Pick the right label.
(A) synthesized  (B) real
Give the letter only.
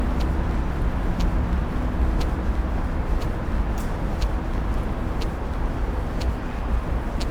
B